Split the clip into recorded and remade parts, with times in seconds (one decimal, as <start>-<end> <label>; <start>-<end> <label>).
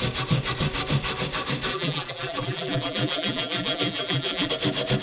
0.0-1.7 recorded; 1.7-4.5 remade; 4.5-5.0 recorded